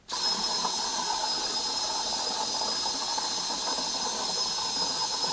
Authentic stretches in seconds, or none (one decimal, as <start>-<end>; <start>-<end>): 0.0-5.3